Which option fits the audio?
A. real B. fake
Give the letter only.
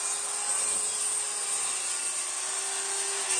A